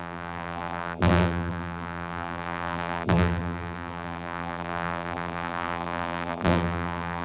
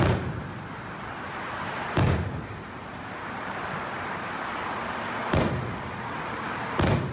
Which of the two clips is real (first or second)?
second